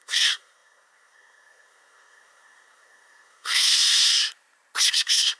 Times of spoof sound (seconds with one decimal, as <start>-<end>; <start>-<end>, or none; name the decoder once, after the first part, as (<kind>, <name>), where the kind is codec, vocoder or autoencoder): 0.0-4.2 (codec, SNAC); 4.9-5.4